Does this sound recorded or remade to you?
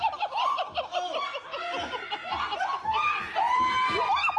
recorded